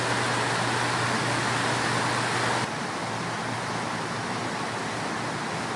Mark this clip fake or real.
real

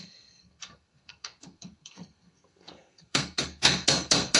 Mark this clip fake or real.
fake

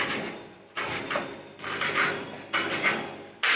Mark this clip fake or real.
real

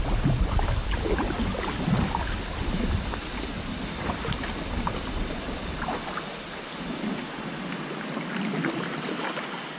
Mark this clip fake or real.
real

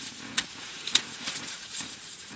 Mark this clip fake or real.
fake